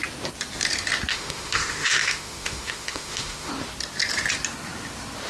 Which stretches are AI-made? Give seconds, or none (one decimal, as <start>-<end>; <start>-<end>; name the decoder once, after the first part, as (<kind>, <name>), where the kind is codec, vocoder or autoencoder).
1.1-3.5 (autoencoder, DAC-VAE)